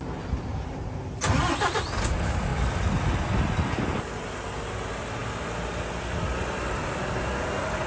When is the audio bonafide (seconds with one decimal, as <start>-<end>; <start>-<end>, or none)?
0.0-7.9